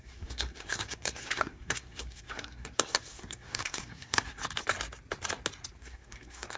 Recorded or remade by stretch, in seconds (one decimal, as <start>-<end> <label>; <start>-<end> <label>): 0.0-4.4 remade; 4.4-5.8 recorded; 5.8-6.6 remade